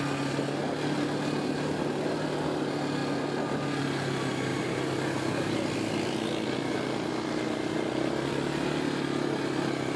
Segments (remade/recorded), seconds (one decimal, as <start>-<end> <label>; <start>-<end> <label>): 0.0-10.0 recorded